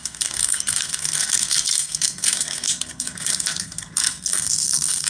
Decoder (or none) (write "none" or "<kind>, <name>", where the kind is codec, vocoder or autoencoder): codec, SNAC